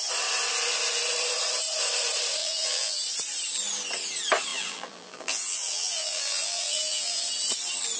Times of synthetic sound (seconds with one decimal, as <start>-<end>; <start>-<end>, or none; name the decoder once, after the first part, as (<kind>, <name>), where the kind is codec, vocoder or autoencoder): 2.4-3.0 (vocoder, BigVGAN v2); 4.5-7.2

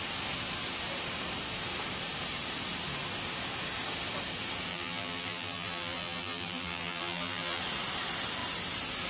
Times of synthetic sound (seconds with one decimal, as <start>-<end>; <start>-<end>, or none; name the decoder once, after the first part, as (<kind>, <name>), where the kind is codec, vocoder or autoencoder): 4.7-7.6 (vocoder, BigVGAN v2)

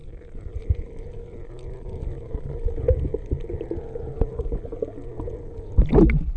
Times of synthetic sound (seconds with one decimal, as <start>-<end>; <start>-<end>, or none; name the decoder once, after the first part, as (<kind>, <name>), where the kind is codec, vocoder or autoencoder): none

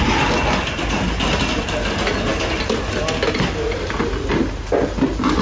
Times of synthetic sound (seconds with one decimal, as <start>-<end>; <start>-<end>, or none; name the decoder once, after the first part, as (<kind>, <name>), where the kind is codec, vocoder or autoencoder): none